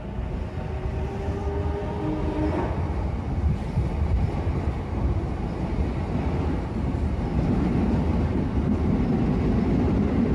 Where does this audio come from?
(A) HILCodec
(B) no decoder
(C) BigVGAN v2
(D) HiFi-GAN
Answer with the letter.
B